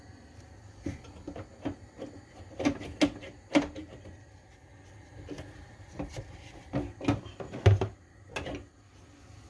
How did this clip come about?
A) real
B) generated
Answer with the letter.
A